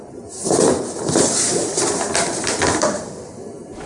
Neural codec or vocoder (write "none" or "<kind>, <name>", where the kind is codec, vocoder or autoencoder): none